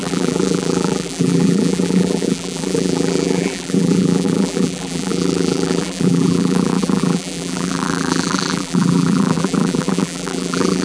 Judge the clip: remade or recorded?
remade